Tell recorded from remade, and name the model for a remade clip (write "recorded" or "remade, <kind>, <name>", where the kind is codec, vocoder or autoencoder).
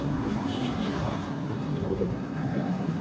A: remade, codec, SNAC